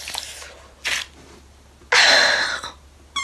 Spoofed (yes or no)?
no